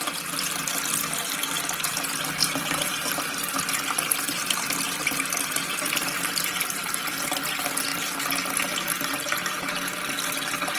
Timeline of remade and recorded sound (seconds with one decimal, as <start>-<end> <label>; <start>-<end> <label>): 0.0-2.4 recorded; 2.4-3.1 remade; 3.1-10.8 recorded